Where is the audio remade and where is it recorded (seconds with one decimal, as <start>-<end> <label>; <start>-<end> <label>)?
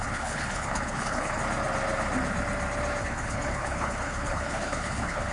0.0-1.4 remade; 1.4-3.0 recorded; 3.0-5.3 remade